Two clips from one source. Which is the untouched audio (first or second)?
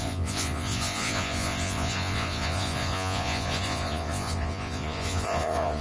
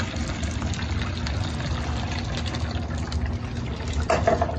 second